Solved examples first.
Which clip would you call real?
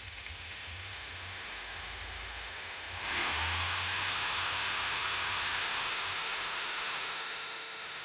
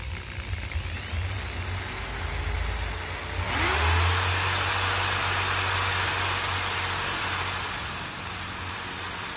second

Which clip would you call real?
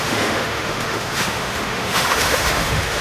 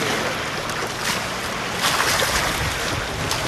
second